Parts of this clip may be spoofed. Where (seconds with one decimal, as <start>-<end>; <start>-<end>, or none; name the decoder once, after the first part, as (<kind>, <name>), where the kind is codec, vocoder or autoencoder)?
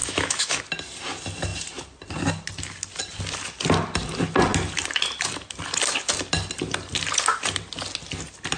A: 0.0-0.6 (autoencoder, DAC-VAE)